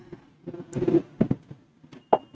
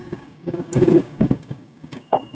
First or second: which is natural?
first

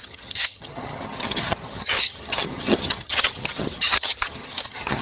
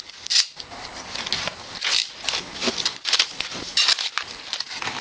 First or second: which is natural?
second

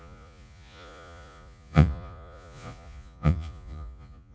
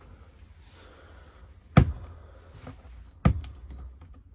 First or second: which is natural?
second